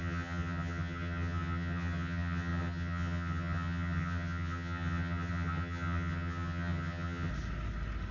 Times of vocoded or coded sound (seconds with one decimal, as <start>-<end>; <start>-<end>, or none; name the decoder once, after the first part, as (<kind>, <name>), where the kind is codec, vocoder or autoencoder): 0.0-7.3 (vocoder, HiFi-GAN)